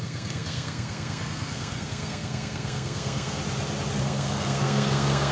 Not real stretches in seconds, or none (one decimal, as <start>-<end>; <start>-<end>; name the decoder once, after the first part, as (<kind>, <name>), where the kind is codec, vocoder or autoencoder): 0.0-3.4 (codec, SNAC); 4.0-5.3